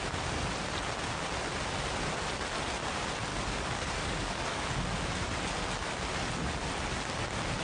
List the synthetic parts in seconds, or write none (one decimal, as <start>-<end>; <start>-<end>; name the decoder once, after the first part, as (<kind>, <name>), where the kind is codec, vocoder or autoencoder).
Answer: 3.3-4.7 (codec, DAC)